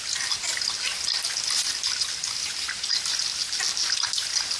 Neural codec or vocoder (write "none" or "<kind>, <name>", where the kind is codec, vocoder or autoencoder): none